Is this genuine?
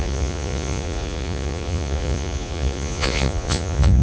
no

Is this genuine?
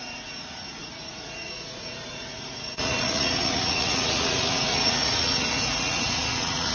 no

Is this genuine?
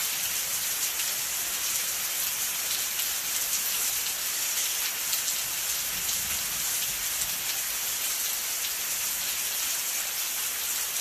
yes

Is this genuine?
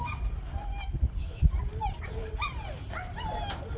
yes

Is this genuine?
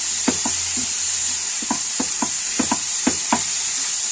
yes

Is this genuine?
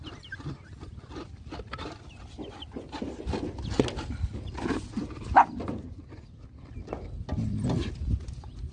yes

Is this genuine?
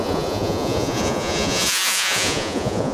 no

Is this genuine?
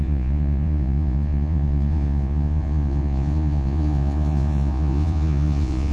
no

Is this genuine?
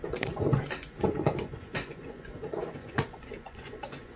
no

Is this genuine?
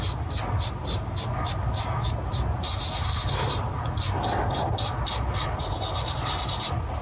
yes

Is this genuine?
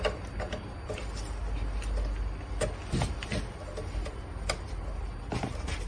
yes